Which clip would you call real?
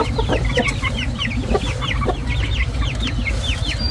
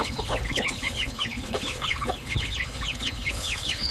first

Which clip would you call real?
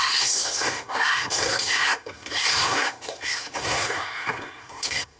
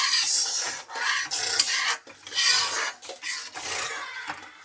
second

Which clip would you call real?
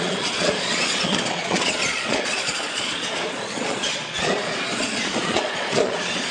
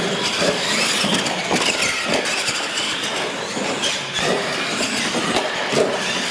second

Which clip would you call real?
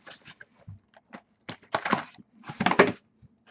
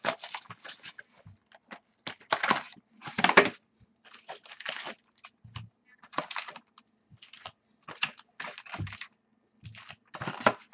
second